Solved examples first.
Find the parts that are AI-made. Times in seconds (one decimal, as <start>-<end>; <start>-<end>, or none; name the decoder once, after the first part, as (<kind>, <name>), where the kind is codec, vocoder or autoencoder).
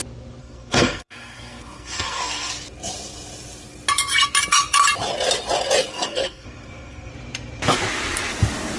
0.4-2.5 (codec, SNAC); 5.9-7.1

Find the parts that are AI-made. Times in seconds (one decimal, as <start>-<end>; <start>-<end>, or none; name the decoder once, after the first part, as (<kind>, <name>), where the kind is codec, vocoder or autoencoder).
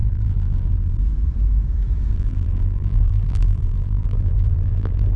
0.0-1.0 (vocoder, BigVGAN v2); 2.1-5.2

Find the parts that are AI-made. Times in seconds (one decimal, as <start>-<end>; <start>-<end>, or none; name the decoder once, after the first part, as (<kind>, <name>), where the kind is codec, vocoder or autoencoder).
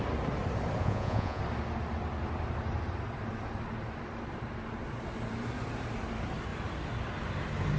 0.8-1.4 (vocoder, Vocos)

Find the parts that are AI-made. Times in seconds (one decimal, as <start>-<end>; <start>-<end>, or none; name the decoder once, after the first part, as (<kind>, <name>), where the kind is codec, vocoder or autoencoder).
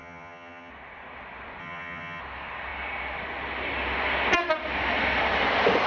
0.0-0.7 (vocoder, HiFi-GAN); 1.6-2.2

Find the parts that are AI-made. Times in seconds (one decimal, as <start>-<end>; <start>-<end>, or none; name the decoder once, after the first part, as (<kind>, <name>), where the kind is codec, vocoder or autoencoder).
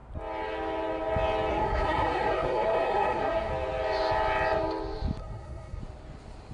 1.5-3.5 (codec, SNAC); 5.2-5.8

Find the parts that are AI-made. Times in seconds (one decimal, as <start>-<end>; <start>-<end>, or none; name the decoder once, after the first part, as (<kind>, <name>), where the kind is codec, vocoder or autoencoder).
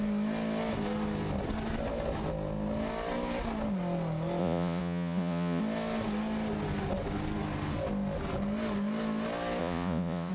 4.4-5.6 (vocoder, Vocos); 9.6-10.3